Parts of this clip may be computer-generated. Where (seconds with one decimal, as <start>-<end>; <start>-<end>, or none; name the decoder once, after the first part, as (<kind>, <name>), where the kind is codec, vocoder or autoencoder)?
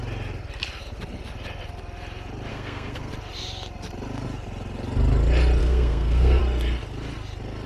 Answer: 2.5-3.1 (codec, SNAC); 5.6-6.4